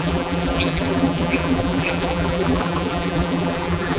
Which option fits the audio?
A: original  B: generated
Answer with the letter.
B